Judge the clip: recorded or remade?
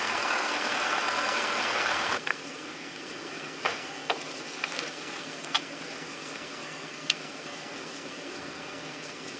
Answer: remade